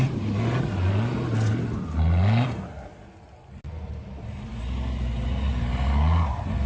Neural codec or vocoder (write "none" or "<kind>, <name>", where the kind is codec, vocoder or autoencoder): none